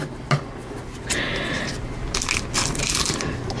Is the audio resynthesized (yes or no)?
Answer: no